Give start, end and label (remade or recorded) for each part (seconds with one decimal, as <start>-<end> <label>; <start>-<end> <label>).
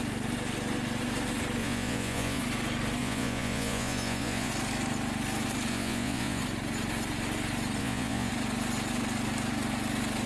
0.0-1.6 recorded; 1.6-2.4 remade; 2.4-3.0 recorded; 3.0-4.5 remade; 4.5-5.7 recorded; 5.7-6.4 remade; 6.4-7.8 recorded; 7.8-8.3 remade; 8.3-10.3 recorded